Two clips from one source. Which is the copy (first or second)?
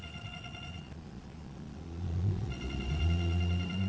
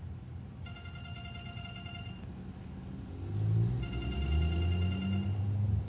first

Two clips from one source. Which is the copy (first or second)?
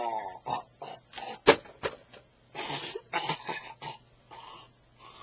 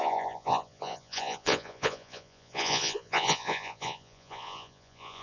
second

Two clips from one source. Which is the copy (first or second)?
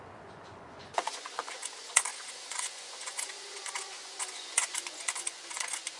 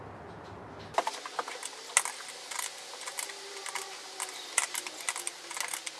first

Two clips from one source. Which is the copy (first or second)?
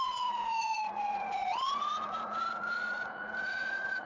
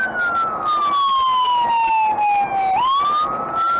first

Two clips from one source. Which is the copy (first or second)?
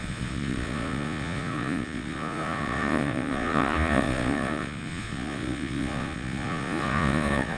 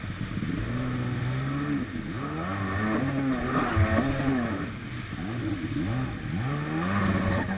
first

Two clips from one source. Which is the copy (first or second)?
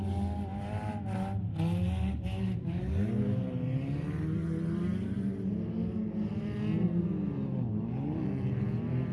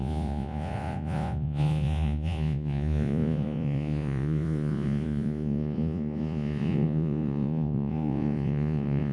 second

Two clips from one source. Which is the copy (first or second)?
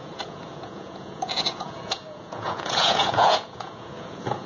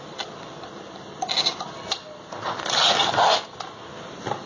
first